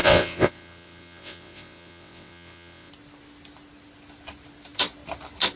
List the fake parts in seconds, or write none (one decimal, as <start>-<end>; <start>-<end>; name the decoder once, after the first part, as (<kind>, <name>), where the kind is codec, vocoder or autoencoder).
0.0-2.9 (vocoder, WaveNeXt)

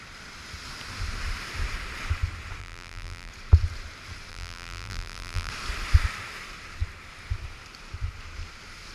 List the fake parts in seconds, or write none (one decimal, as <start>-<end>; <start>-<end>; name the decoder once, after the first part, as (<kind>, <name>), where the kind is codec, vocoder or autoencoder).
2.6-3.3 (vocoder, BigVGAN v2); 4.3-5.5

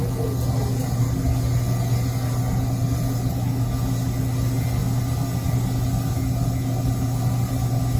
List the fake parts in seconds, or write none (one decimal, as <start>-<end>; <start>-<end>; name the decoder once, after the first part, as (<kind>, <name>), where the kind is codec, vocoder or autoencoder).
none

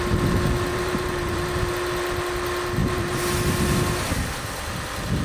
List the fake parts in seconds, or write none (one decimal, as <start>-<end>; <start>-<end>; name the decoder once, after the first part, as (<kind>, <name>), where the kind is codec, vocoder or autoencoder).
0.7-1.7 (vocoder, BigVGAN v2); 2.8-3.3

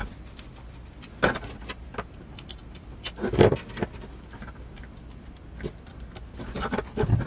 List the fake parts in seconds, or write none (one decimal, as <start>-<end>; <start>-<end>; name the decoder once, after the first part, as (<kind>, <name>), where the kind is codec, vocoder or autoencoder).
1.4-7.3 (vocoder, BigVGAN v2)